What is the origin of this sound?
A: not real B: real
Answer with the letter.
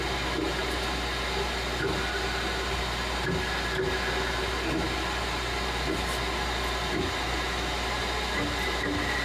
B